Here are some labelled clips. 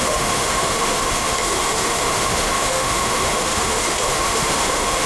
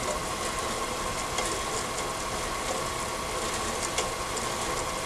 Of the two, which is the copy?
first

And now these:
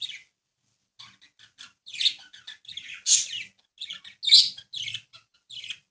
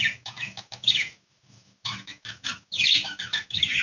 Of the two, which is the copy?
second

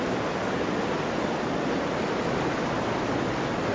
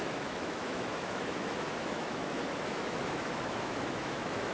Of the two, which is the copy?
second